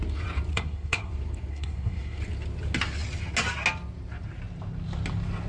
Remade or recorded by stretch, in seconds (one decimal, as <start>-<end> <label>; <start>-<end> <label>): 0.0-0.5 recorded; 0.5-1.1 remade; 1.1-1.5 recorded; 1.5-2.2 remade; 2.2-5.5 recorded

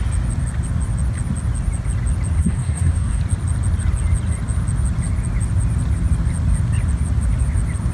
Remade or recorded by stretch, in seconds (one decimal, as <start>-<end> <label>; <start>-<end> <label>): 0.0-2.4 recorded; 2.4-3.2 remade; 3.2-7.9 recorded

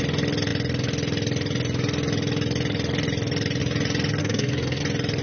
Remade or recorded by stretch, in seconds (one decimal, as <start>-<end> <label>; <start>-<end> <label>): 0.0-4.2 recorded; 4.2-4.8 remade; 4.8-5.2 recorded

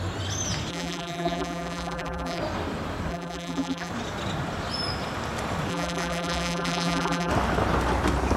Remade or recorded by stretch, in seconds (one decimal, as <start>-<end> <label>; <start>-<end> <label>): 0.0-0.7 recorded; 0.7-2.4 remade; 2.4-3.1 recorded; 3.1-3.9 remade; 3.9-5.7 recorded; 5.7-7.3 remade; 7.3-8.4 recorded

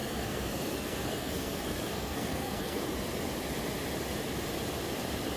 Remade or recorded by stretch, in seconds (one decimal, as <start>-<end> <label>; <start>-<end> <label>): 0.0-2.8 remade; 2.8-5.4 recorded

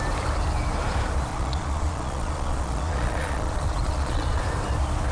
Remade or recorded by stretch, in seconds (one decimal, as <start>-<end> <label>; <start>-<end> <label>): 0.0-1.3 recorded; 1.3-4.4 remade; 4.4-5.1 recorded

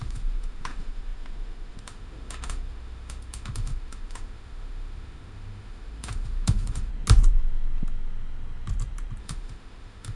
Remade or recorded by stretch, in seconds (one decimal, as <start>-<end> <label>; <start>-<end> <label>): 0.0-6.9 remade; 6.9-9.2 recorded; 9.2-10.2 remade

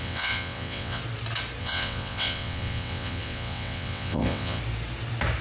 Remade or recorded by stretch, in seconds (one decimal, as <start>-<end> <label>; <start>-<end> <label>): 0.0-1.0 remade; 1.0-1.6 recorded; 1.6-4.6 remade; 4.6-5.4 recorded